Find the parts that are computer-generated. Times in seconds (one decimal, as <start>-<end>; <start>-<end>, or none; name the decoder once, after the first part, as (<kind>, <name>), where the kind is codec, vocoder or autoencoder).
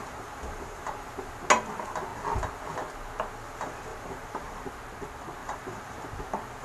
0.0-1.1 (vocoder, BigVGAN v2); 3.9-4.7; 5.4-6.1